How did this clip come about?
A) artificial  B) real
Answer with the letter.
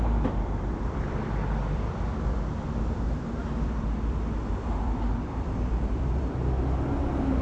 A